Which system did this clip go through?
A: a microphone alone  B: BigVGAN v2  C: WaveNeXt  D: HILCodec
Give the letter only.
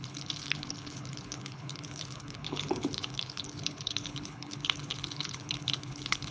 D